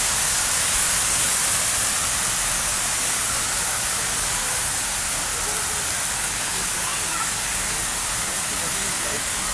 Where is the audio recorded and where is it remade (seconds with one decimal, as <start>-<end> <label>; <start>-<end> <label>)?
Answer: 0.0-1.4 remade; 1.4-2.5 recorded; 2.5-5.3 remade; 5.3-6.1 recorded; 6.1-9.5 remade